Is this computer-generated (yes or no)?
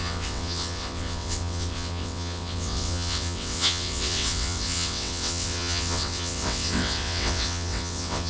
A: yes